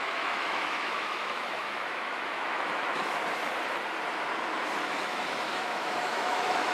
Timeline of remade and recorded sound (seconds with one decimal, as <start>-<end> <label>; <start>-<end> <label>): 0.0-3.2 remade; 3.2-4.9 recorded; 4.9-6.7 remade